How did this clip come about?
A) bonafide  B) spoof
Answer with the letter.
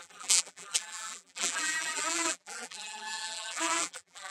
B